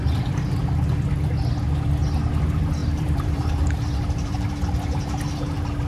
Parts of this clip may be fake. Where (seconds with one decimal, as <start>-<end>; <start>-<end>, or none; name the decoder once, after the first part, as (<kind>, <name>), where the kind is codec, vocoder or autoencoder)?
2.8-4.5 (vocoder, BigVGAN v2)